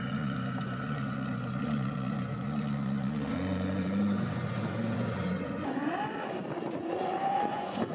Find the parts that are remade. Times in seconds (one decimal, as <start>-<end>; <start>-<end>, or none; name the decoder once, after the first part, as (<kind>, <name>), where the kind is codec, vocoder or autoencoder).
0.0-5.8 (vocoder, Vocos); 6.6-7.9